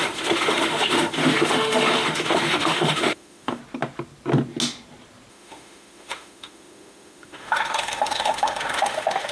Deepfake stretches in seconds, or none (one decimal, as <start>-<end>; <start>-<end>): 0.0-3.6; 5.3-9.3